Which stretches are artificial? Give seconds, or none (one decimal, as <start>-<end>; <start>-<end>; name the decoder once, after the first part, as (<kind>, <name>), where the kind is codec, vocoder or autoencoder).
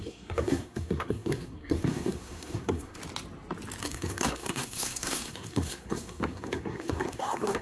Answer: 0.0-3.0 (codec, SNAC); 3.8-7.6